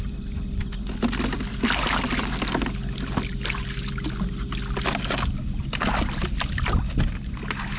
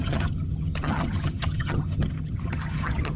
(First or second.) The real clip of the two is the first